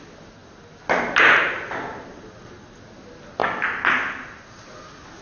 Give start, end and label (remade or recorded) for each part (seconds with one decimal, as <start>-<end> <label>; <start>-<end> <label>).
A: 0.0-5.2 recorded